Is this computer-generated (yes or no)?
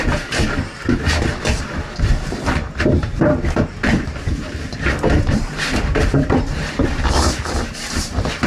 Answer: yes